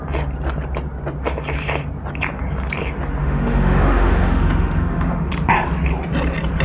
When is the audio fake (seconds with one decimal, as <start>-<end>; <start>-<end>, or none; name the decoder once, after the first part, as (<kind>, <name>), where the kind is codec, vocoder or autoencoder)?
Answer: 3.2-5.3 (autoencoder, DAC-VAE)